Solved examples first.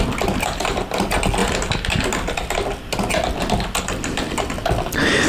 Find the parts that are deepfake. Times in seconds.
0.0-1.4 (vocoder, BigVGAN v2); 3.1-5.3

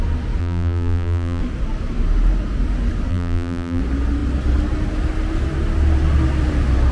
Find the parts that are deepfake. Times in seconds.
0.4-1.4 (vocoder, BigVGAN v2); 3.1-3.8